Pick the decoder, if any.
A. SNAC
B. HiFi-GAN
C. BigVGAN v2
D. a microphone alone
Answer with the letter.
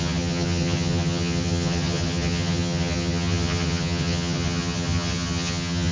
B